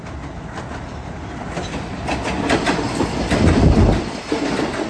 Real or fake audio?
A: real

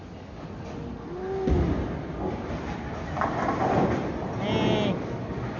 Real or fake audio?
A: real